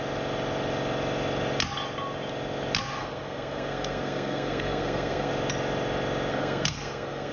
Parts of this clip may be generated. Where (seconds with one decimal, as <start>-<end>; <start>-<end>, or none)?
3.0-5.3; 6.3-7.3